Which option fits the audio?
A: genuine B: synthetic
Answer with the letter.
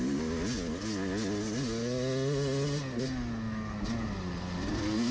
A